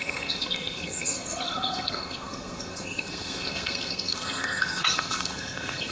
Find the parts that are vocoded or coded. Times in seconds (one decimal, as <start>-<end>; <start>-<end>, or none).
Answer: 0.0-5.9